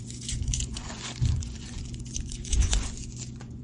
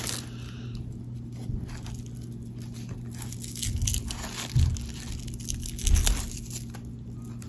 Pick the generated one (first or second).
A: first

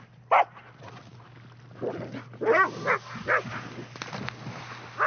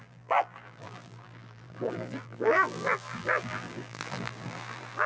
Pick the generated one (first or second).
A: second